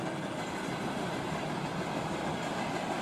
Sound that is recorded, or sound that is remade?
recorded